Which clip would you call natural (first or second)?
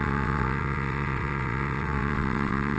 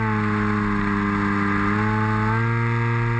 second